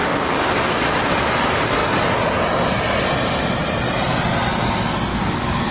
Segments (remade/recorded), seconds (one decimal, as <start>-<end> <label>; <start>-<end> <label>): 0.0-0.8 remade; 0.8-5.1 recorded; 5.1-5.7 remade